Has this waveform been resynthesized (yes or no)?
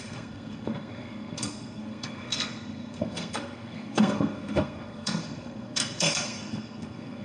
yes